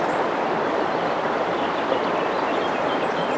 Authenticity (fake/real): real